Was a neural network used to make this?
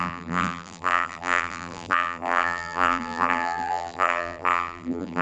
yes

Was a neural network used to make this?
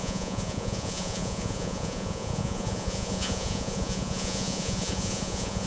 yes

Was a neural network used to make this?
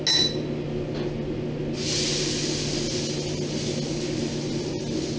no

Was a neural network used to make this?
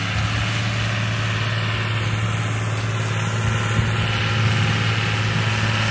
no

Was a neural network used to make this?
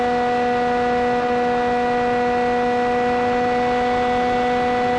no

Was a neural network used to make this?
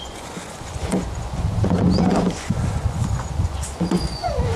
yes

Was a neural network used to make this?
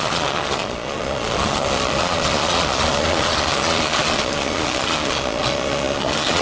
yes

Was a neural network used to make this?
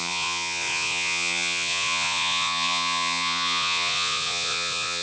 yes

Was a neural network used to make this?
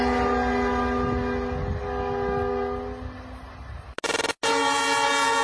no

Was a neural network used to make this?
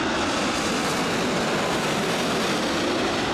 no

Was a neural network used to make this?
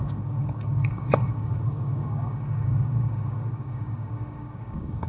yes